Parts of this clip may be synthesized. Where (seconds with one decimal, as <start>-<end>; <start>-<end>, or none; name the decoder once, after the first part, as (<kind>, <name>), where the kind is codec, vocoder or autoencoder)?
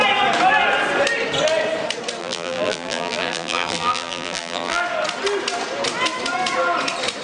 2.2-4.8 (vocoder, BigVGAN v2)